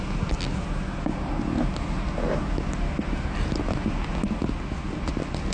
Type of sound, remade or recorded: recorded